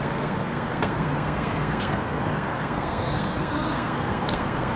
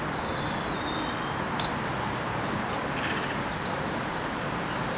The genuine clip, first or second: second